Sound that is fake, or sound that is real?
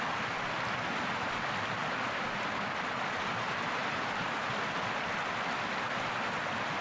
real